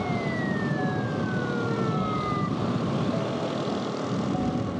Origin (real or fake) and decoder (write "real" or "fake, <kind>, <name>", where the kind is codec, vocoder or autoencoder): real